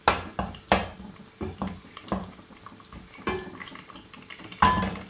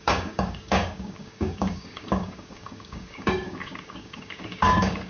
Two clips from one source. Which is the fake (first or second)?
second